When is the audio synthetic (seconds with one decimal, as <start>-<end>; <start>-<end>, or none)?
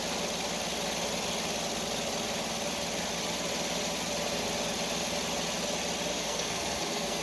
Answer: 6.1-7.2